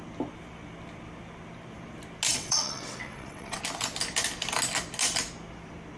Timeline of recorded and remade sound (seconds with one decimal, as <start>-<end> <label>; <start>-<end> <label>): 0.0-2.3 recorded; 2.3-3.6 remade; 3.6-6.0 recorded